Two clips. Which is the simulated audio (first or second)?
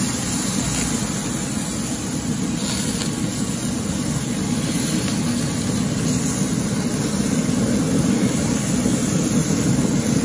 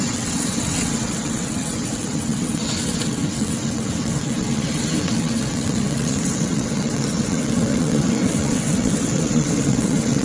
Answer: second